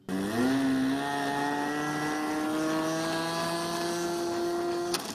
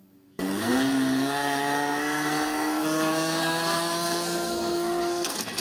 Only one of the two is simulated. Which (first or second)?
second